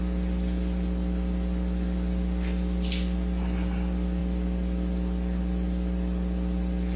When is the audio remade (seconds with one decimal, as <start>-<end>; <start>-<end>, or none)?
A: none